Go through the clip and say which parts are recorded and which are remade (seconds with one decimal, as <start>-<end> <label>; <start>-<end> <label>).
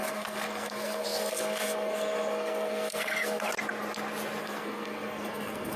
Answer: 0.0-3.5 remade; 3.5-4.4 recorded; 4.4-5.8 remade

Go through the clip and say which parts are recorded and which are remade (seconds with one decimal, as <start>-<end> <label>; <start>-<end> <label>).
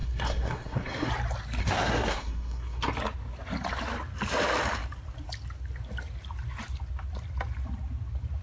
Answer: 0.0-1.1 remade; 1.1-1.6 recorded; 1.6-2.9 remade; 2.9-8.4 recorded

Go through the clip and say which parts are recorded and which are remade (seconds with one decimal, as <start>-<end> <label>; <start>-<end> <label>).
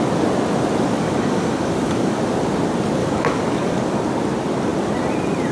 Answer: 0.0-1.0 recorded; 1.0-2.2 remade; 2.2-3.0 recorded; 3.0-4.0 remade; 4.0-5.5 recorded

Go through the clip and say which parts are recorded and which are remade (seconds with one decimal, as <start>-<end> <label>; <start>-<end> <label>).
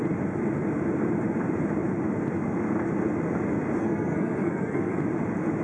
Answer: 0.0-3.8 recorded; 3.8-5.0 remade; 5.0-5.6 recorded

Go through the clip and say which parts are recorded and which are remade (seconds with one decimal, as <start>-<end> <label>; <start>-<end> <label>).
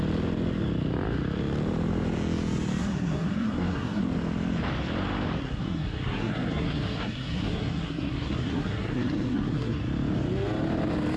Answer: 0.0-2.8 recorded; 2.8-4.0 remade; 4.0-5.4 recorded; 5.4-9.8 remade; 9.8-11.2 recorded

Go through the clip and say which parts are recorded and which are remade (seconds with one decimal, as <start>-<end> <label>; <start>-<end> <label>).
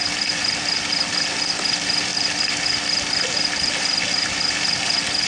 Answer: 0.0-5.3 recorded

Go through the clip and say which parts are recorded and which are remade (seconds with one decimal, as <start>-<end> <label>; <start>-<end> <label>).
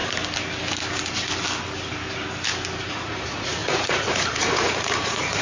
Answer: 0.0-2.9 recorded; 2.9-5.4 remade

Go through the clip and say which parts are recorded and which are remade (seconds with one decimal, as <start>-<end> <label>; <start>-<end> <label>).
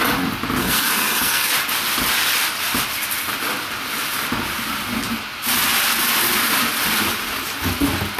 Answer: 0.0-0.6 recorded; 0.6-1.5 remade; 1.5-8.2 recorded